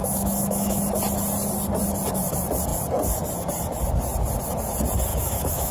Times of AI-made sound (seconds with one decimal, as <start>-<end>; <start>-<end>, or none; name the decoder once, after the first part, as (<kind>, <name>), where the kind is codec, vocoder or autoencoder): 0.0-0.8 (autoencoder, DAC-VAE); 5.1-5.7

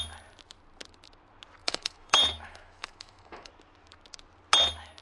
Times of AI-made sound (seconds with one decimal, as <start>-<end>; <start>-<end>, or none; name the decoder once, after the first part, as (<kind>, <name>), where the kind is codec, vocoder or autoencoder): 1.6-3.5 (autoencoder, DAC-VAE)